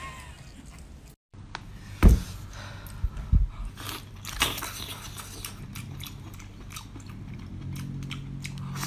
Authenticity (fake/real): real